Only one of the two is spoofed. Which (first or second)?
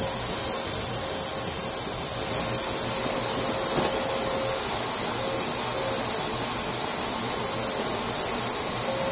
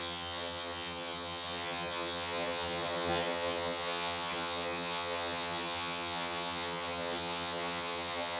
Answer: second